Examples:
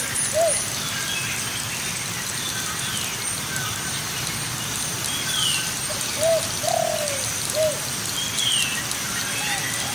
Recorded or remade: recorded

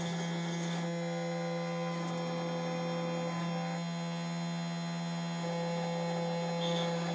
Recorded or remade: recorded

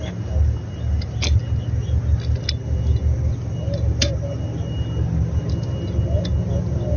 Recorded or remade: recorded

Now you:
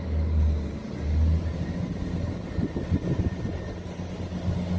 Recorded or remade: recorded